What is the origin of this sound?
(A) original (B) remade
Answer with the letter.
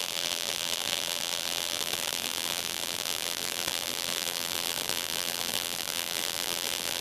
B